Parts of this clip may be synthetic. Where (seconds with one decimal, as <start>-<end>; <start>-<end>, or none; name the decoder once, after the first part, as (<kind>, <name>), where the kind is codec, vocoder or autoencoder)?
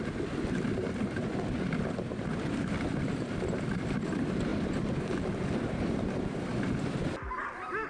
0.0-1.2 (vocoder, BigVGAN v2); 2.5-7.9